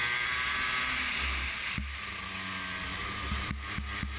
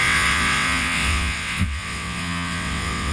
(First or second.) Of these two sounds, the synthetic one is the second